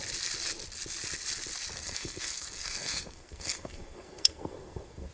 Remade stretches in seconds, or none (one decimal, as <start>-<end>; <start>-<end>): 1.7-5.1